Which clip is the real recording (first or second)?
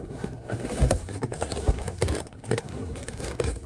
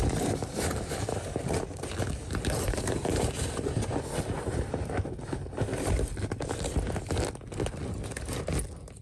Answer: second